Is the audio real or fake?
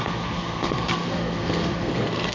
fake